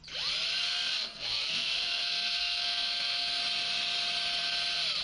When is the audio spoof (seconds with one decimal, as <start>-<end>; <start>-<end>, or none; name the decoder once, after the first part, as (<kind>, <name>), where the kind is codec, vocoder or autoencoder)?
0.6-3.4 (codec, SNAC)